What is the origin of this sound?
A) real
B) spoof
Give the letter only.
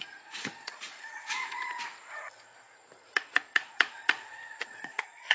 B